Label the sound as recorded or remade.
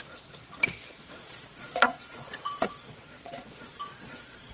remade